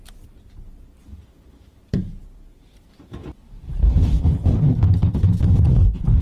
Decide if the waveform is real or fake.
fake